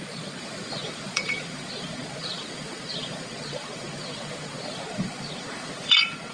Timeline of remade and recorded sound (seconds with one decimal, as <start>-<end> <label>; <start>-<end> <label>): 0.0-6.3 remade